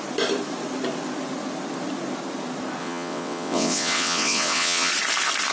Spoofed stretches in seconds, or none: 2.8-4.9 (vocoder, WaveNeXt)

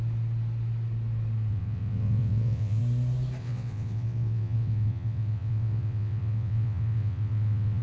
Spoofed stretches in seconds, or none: 1.5-2.8 (vocoder, WaveNeXt); 3.4-7.8

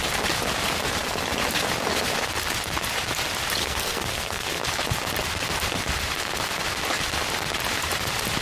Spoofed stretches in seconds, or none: 3.6-4.6 (codec, SNAC)

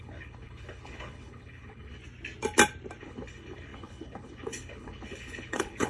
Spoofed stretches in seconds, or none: 0.0-2.0 (codec, HILCodec); 3.0-5.9